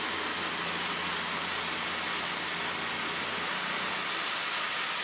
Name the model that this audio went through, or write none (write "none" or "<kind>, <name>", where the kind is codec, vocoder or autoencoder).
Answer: none